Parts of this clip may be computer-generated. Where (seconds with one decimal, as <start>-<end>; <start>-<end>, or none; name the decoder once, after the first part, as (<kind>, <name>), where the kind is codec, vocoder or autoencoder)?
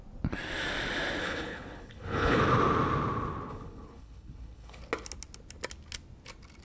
1.2-2.4 (codec, HILCodec); 3.5-4.8